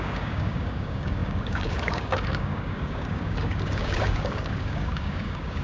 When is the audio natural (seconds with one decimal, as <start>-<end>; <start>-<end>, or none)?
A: none

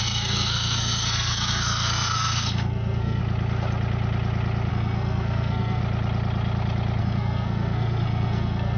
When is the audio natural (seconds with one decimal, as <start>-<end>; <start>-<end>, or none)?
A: 3.2-4.7; 5.8-7.0

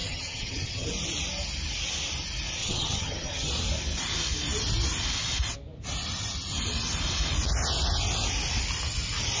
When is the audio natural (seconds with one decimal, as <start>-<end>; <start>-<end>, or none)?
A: 0.9-2.6; 3.5-9.4

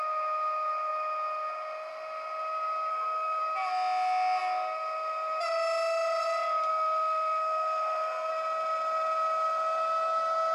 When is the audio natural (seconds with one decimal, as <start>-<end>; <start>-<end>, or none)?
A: 0.0-2.9; 3.4-6.7; 8.3-10.5